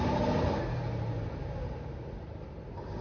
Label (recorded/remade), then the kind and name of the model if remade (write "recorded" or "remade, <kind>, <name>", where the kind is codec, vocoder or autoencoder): recorded